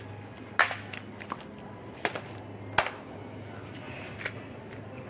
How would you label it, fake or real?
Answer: real